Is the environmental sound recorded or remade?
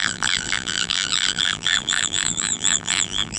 remade